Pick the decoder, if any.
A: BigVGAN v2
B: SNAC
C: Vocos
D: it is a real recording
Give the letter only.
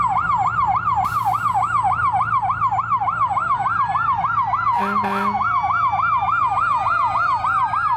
D